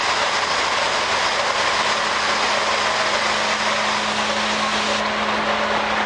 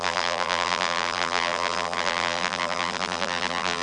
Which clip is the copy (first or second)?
second